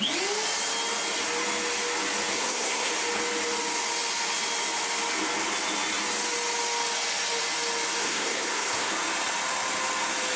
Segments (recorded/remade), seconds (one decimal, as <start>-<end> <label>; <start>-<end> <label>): 0.0-2.3 recorded; 2.3-2.9 remade; 2.9-8.0 recorded; 8.0-8.9 remade; 8.9-10.4 recorded